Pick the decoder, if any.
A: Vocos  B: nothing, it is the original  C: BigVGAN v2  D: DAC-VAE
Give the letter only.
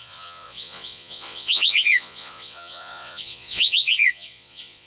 A